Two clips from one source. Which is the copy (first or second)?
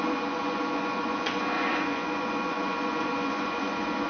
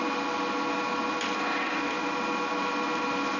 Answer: first